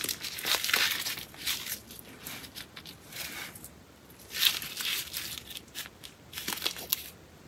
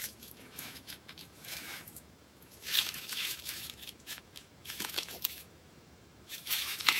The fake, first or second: second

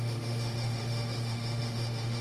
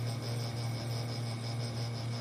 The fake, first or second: first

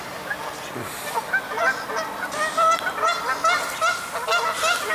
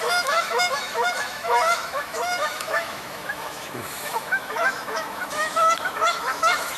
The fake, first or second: second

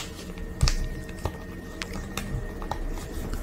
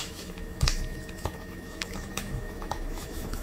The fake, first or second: second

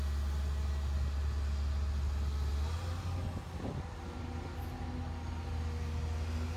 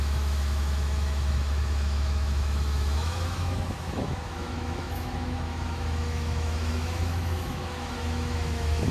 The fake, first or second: second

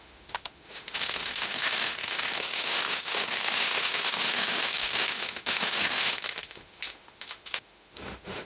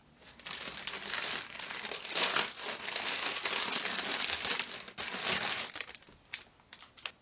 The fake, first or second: first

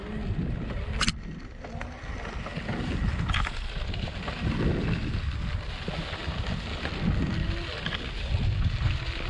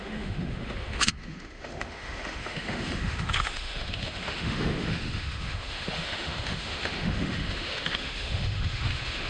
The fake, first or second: second